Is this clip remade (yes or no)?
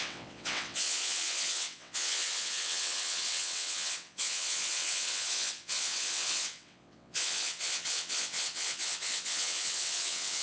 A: yes